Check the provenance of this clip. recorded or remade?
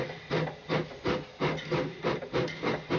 recorded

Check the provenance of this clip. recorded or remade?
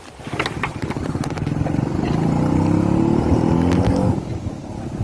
recorded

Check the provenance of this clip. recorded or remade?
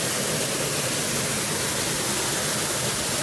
recorded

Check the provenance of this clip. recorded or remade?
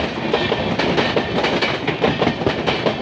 recorded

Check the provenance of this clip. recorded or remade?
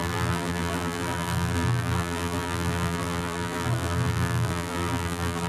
remade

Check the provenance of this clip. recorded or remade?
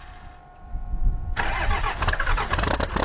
remade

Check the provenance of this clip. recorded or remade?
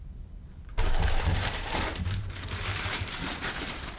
remade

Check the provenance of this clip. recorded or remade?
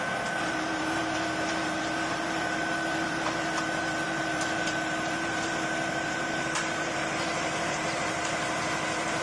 remade